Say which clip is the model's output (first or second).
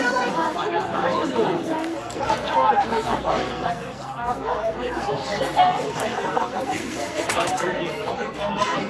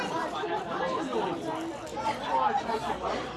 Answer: first